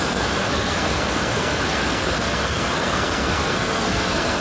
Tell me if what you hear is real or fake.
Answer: fake